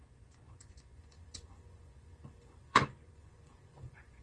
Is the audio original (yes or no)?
no